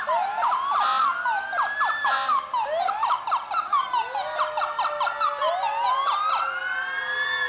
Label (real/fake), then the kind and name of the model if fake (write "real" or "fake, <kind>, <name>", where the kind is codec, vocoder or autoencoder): real